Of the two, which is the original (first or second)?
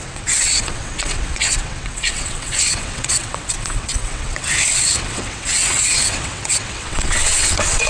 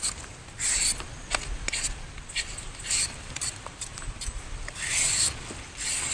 second